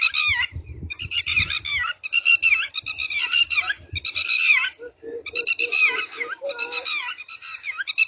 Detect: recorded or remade remade